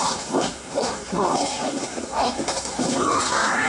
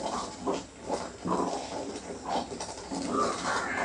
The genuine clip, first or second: second